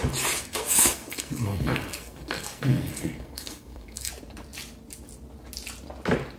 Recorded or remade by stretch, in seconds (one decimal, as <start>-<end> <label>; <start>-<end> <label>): 0.0-0.4 recorded; 0.4-4.1 remade; 4.1-6.4 recorded